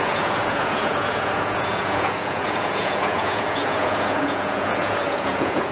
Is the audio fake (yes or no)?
yes